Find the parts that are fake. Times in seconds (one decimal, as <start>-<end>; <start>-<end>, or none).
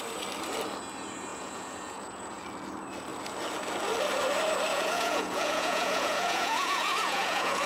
1.3-2.4; 4.7-7.7